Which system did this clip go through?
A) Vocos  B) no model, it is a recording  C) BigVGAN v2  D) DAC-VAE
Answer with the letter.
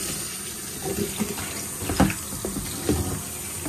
B